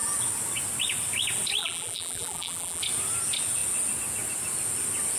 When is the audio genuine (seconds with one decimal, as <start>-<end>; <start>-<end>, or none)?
0.0-1.6; 2.8-5.2